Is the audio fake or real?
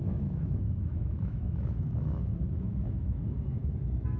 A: fake